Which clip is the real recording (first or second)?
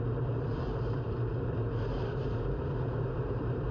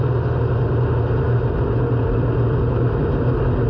second